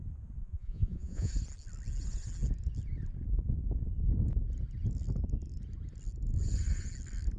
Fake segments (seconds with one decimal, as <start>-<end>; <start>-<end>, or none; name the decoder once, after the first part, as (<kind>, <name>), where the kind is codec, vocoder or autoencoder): 0.4-1.3 (vocoder, Vocos)